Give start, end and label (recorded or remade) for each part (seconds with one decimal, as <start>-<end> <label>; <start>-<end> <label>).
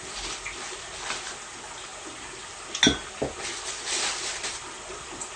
0.0-5.4 recorded